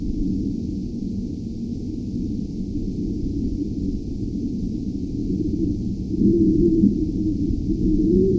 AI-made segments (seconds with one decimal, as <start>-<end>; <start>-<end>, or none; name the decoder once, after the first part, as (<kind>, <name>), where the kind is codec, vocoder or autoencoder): none